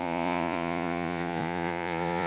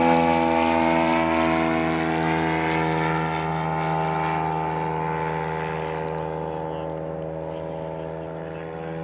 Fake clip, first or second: first